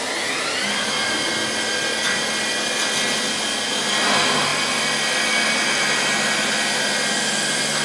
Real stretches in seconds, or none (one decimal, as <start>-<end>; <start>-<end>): 0.0-7.8